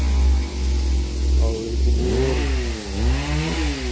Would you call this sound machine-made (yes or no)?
no